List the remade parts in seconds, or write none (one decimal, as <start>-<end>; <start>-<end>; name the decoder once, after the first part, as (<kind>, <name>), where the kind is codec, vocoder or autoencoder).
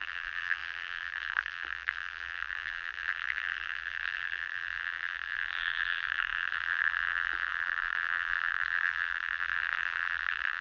0.0-10.6 (vocoder, BigVGAN v2)